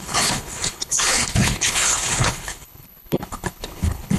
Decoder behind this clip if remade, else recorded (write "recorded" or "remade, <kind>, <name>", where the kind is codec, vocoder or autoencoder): remade, codec, HILCodec